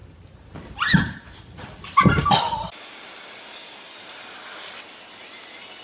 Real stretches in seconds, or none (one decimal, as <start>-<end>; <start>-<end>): 3.4-5.8

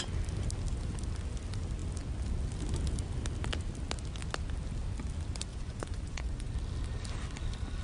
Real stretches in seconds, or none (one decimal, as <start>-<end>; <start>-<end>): 0.0-5.5; 6.5-7.8

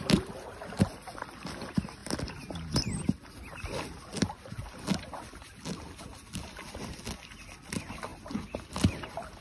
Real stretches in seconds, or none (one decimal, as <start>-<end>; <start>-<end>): 0.0-2.0; 2.8-9.4

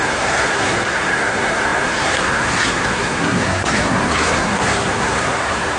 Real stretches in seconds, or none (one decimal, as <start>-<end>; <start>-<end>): none

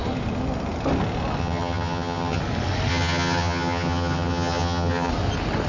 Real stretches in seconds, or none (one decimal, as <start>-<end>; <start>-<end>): 0.0-1.4; 2.4-2.9; 5.1-5.7

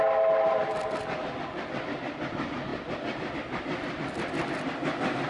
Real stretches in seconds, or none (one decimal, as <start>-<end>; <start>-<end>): 0.0-5.3

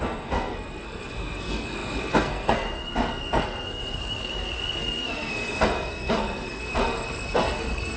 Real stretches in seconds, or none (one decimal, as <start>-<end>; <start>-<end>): none

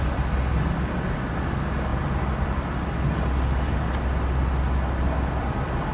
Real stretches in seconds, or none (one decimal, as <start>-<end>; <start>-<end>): 0.0-5.9